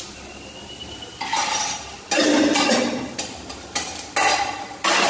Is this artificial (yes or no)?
no